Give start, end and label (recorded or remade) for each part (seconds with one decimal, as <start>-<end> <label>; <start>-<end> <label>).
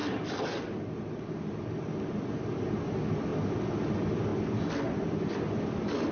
0.0-6.1 recorded